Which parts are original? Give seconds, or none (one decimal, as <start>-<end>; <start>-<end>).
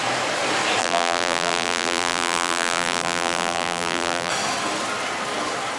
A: 0.0-0.8; 4.3-5.8